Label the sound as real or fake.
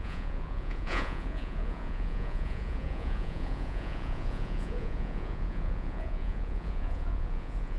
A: fake